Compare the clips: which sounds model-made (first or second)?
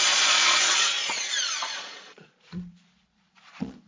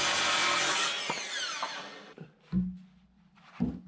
first